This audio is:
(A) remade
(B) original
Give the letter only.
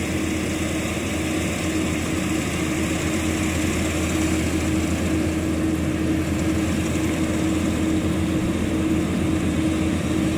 B